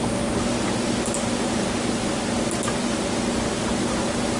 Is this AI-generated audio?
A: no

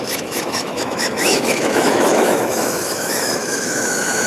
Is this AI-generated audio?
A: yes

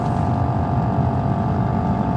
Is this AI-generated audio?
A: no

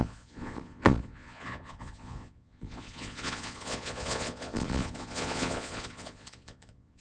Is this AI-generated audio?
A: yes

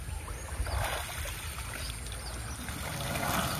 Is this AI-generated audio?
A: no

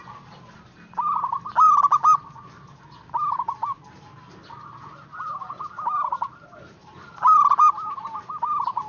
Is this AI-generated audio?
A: no